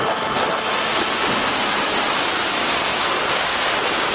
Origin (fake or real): real